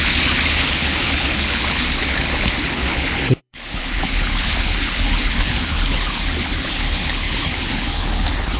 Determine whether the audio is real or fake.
fake